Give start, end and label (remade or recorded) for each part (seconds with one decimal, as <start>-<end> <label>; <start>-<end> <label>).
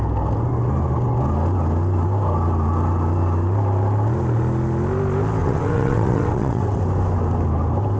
0.0-5.4 recorded; 5.4-6.8 remade; 6.8-8.0 recorded